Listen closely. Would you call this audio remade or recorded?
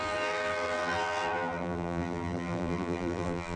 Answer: remade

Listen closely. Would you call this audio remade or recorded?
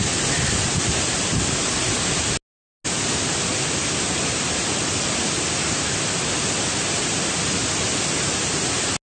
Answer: recorded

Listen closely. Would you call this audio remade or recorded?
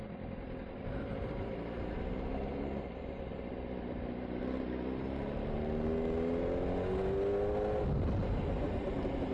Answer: recorded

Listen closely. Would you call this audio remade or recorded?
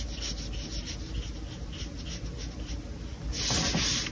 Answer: recorded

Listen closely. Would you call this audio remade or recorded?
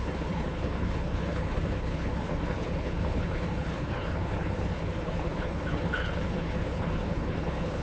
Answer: remade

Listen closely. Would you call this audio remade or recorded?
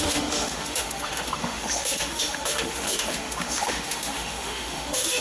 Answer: remade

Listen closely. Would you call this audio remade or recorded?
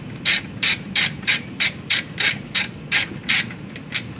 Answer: remade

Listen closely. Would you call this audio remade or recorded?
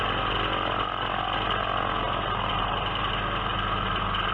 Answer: recorded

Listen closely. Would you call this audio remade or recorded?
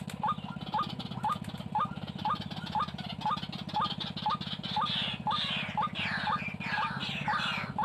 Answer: recorded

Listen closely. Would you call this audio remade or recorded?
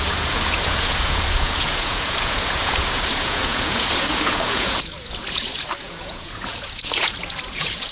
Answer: remade